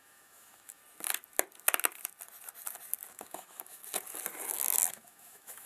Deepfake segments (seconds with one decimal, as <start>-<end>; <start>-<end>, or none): 0.0-0.8; 3.1-3.8; 4.9-5.7